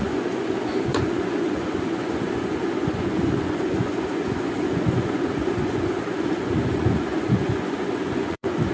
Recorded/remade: remade